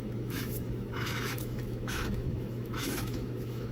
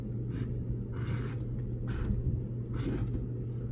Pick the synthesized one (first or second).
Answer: first